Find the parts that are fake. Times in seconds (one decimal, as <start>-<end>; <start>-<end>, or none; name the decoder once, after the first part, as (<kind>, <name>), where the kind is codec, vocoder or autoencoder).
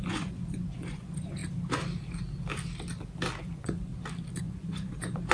0.0-1.4 (vocoder, Vocos); 3.4-3.9; 4.4-5.3